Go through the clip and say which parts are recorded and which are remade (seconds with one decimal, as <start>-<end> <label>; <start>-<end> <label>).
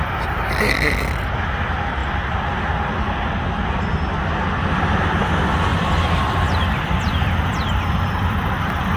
0.0-5.7 recorded; 5.7-9.0 remade